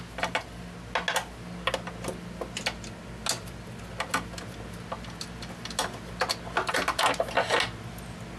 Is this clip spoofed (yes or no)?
no